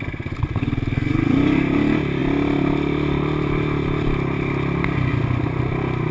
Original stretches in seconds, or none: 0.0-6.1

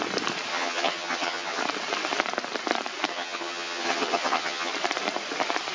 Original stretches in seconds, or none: 0.0-0.5; 1.6-3.1; 4.7-5.7

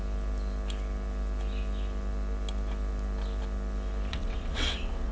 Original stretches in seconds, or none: 0.0-4.1